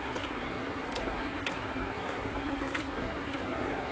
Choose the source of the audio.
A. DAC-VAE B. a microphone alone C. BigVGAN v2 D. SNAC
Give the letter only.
D